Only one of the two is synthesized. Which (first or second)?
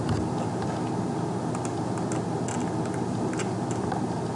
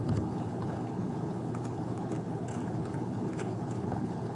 second